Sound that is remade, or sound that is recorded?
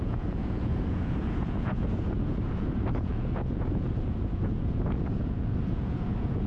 remade